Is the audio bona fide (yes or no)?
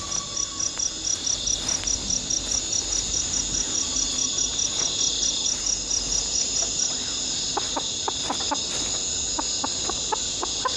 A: yes